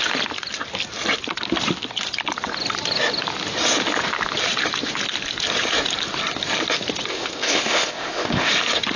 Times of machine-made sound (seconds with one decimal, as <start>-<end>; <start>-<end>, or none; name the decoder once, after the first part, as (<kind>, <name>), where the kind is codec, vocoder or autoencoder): 7.1-8.5 (codec, ZipCodec)